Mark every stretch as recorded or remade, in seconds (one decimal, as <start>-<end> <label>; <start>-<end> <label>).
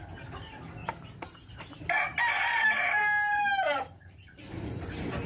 0.0-0.8 recorded; 0.8-1.5 remade; 1.5-2.1 recorded; 2.1-4.4 remade; 4.4-5.3 recorded